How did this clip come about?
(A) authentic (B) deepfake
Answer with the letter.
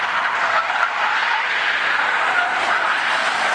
A